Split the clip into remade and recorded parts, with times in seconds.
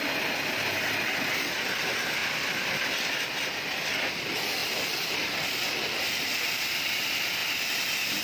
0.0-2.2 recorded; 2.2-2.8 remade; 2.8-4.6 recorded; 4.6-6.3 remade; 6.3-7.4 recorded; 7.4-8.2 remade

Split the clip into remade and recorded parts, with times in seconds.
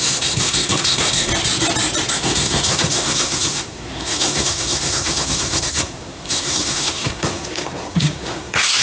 0.0-1.3 remade; 1.3-2.1 recorded; 2.1-8.8 remade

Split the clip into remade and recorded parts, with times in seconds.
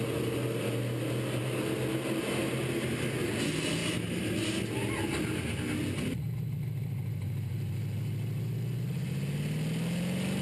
0.0-10.4 recorded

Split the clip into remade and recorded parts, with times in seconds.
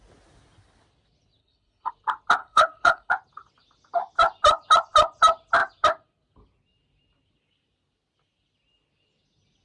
0.0-1.4 recorded; 1.4-1.9 remade; 1.9-2.4 recorded; 2.4-3.1 remade; 3.1-9.6 recorded